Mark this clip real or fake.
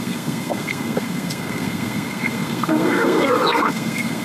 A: fake